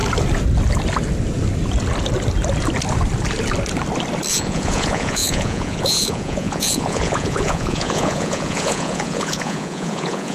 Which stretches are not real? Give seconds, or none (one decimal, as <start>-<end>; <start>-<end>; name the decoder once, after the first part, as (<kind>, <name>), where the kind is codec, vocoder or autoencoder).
4.3-10.3 (vocoder, Vocos)